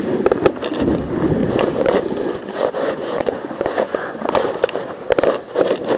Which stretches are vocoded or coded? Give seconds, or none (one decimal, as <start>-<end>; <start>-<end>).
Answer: 1.4-4.5